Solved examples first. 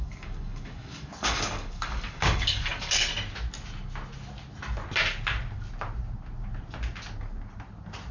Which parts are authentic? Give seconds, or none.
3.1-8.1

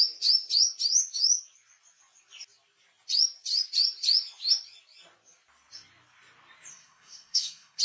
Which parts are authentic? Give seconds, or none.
0.0-6.7

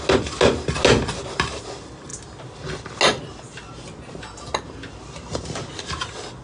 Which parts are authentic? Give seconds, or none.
0.0-6.4

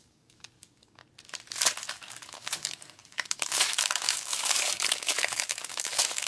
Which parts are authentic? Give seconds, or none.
1.0-1.9

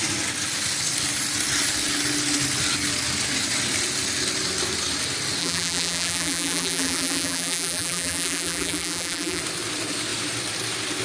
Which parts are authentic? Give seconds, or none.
0.0-5.4; 9.4-11.0